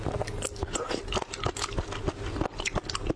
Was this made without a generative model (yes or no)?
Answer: yes